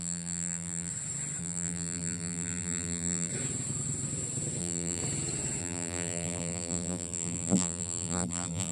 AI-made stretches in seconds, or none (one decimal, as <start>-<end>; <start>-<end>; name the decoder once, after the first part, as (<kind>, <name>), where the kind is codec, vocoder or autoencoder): 0.0-0.9 (vocoder, BigVGAN v2); 1.4-3.3; 4.6-5.0; 5.6-8.7